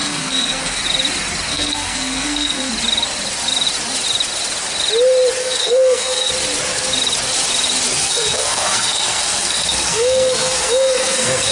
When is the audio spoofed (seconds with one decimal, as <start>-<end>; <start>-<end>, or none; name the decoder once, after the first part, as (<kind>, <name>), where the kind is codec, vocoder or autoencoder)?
0.0-0.8 (codec, SNAC); 1.5-2.7; 5.4-6.3; 8.0-11.5